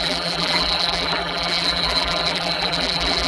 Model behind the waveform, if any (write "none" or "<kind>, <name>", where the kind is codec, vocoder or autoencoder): vocoder, BigVGAN v2